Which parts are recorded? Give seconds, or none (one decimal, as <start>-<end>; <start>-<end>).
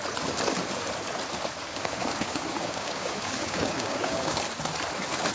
0.0-1.7; 4.4-5.3